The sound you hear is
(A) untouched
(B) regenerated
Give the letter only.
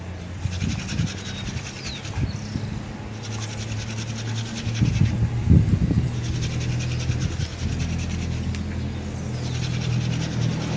A